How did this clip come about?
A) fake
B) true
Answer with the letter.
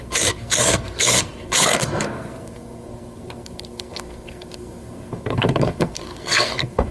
A